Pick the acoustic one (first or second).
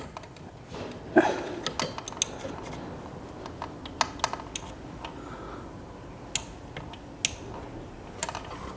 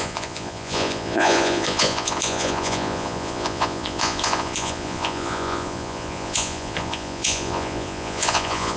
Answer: first